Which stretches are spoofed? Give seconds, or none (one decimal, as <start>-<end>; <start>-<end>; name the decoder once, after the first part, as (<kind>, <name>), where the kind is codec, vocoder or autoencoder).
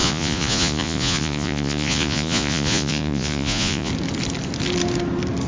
0.0-3.9 (vocoder, Vocos)